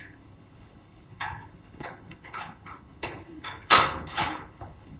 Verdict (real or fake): fake